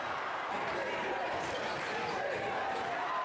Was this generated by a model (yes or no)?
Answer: yes